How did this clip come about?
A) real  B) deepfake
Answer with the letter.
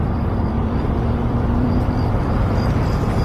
B